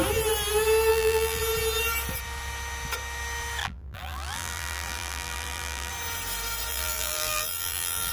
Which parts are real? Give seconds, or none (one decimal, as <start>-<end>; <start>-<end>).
0.0-0.9; 1.4-3.6; 5.9-6.7